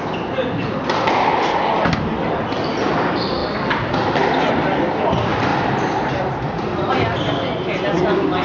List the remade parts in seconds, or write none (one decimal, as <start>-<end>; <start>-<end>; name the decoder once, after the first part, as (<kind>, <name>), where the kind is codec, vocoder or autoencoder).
3.4-4.5 (vocoder, BigVGAN v2); 5.5-6.9